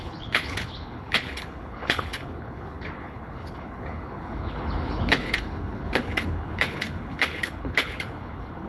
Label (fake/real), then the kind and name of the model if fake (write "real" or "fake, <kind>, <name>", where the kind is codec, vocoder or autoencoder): fake, codec, HILCodec